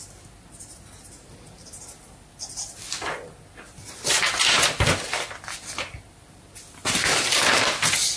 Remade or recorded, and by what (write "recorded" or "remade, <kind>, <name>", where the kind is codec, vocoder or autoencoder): recorded